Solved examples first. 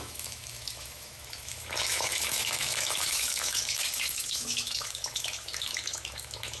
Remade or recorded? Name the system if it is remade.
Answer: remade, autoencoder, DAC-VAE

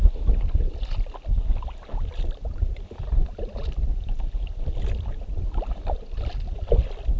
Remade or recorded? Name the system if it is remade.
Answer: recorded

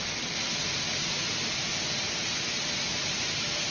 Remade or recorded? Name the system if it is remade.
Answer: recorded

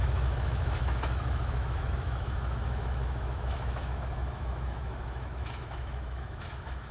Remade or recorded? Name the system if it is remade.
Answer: remade, autoencoder, DAC-VAE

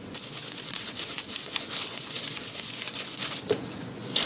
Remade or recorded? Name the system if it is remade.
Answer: remade, vocoder, Vocos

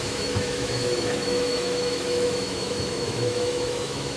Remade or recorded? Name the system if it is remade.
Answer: remade, autoencoder, DAC-VAE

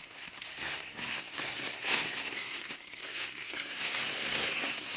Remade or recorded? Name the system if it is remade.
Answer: remade, codec, SNAC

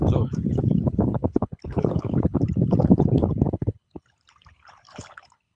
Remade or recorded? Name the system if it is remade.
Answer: remade, codec, HILCodec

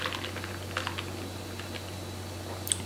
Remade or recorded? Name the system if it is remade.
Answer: recorded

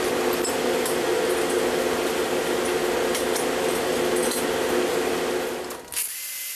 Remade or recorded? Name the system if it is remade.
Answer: recorded